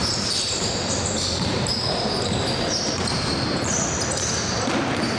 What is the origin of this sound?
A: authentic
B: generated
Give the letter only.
A